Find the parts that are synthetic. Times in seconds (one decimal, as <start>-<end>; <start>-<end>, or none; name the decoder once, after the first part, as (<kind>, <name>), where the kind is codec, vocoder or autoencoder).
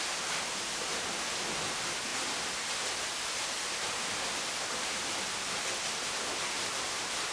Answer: none